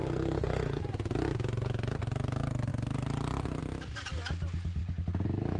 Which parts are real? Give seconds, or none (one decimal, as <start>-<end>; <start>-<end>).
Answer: 0.8-5.6